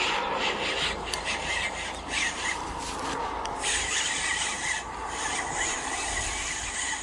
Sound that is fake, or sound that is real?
real